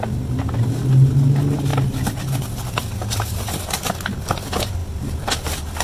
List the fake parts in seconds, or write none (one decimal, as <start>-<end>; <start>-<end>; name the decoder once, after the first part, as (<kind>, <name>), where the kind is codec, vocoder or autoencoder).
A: 4.8-5.8 (vocoder, BigVGAN v2)